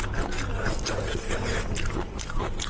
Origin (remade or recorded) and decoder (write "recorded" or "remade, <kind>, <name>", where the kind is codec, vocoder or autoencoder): recorded